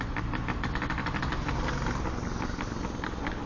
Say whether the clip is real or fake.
real